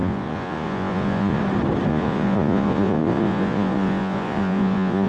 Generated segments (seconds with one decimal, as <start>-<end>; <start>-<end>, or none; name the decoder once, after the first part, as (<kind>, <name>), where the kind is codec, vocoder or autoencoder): 0.0-1.4 (vocoder, Vocos); 1.9-5.1